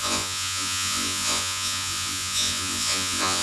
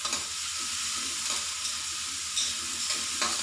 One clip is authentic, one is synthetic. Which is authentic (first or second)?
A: second